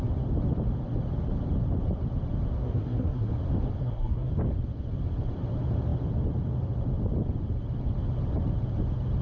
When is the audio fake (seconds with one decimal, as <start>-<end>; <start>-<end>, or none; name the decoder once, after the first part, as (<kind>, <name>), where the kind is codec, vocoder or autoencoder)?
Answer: 2.6-3.3 (codec, SNAC); 3.8-4.3